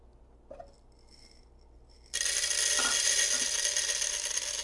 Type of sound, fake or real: real